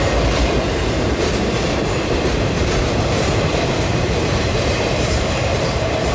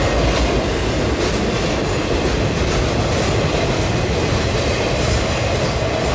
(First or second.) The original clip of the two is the second